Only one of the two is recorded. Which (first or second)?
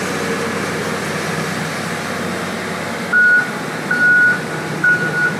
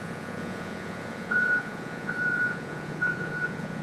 first